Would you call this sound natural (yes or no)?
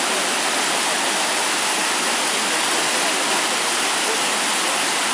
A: yes